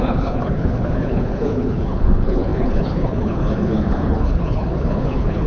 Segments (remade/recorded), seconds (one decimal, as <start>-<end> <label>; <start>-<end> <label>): 0.0-5.5 remade